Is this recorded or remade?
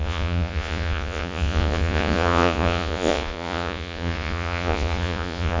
remade